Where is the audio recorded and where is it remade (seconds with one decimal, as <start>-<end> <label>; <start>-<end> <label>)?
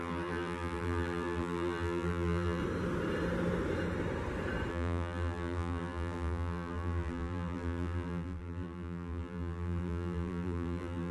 0.0-2.6 remade; 2.6-4.7 recorded; 4.7-11.1 remade